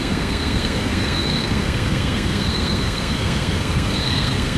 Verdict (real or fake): fake